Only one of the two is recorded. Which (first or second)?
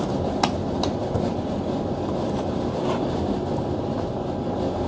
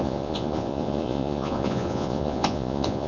first